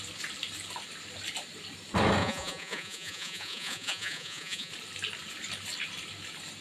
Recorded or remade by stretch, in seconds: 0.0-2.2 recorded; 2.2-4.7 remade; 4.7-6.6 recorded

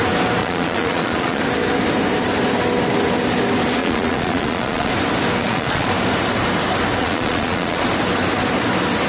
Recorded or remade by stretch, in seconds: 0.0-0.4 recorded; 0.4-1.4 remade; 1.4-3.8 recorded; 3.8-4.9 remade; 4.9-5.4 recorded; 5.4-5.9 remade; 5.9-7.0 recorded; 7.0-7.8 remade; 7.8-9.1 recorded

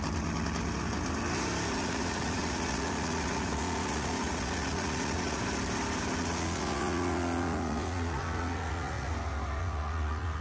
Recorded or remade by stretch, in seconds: 0.0-1.8 recorded; 1.8-5.4 remade; 5.4-6.2 recorded; 6.2-9.1 remade; 9.1-9.6 recorded; 9.6-10.4 remade

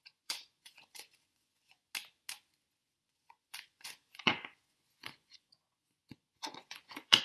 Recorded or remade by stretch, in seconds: 0.0-1.9 remade; 1.9-2.8 recorded; 2.8-7.2 remade